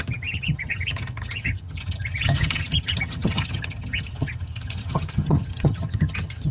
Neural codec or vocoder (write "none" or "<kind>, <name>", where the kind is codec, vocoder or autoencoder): vocoder, HiFi-GAN